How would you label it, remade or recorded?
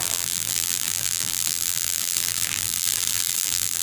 remade